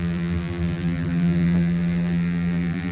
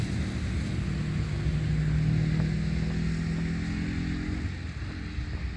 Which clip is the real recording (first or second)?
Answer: second